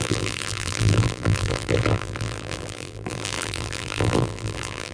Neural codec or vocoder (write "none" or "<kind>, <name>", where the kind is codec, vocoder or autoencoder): vocoder, BigVGAN v2